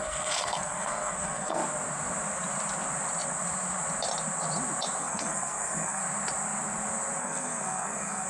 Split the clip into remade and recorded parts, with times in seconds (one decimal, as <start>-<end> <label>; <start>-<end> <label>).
0.0-1.6 remade; 1.6-5.0 recorded; 5.0-6.0 remade; 6.0-7.2 recorded; 7.2-8.3 remade